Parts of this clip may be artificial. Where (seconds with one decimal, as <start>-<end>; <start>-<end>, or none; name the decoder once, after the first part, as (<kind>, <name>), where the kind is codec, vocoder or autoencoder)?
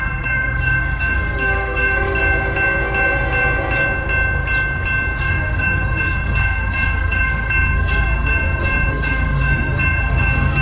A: 0.0-2.2 (codec, SNAC); 5.2-10.6